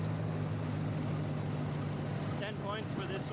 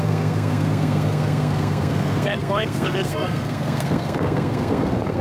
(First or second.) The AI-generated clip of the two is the second